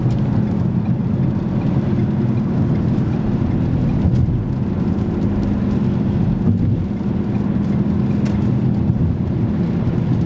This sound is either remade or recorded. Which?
recorded